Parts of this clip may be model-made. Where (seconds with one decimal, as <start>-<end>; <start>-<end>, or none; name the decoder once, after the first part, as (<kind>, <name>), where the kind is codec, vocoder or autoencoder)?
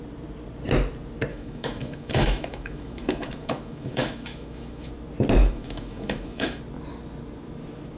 1.3-4.9 (autoencoder, DAC-VAE); 5.4-6.6